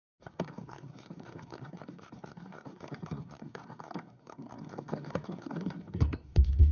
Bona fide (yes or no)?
no